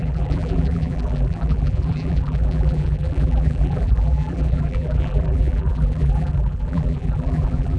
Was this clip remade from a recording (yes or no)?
yes